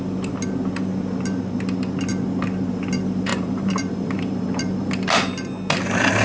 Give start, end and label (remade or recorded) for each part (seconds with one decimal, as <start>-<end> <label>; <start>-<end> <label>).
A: 0.0-3.3 recorded; 3.3-4.9 remade; 4.9-6.2 recorded